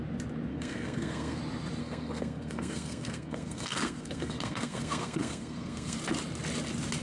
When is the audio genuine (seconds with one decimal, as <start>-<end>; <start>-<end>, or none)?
0.0-0.5; 1.4-1.8; 6.0-7.0